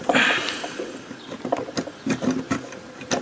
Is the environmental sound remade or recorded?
recorded